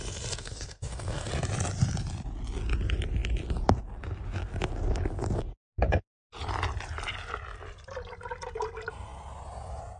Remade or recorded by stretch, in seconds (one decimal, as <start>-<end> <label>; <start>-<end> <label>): 0.0-0.4 recorded; 0.4-1.3 remade; 1.3-10.0 recorded